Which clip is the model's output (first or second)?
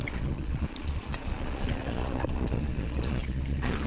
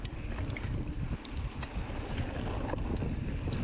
first